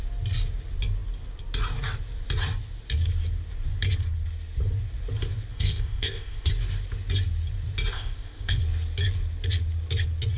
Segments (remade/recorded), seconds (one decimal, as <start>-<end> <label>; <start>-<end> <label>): 0.0-5.5 recorded; 5.5-6.5 remade; 6.5-7.9 recorded; 7.9-8.6 remade; 8.6-10.4 recorded